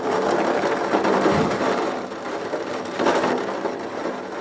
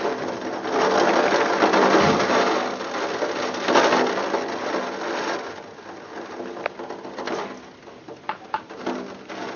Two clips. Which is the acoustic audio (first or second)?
second